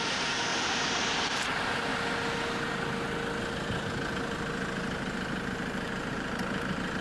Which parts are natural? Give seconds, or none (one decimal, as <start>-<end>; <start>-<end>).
0.5-1.1; 1.9-6.1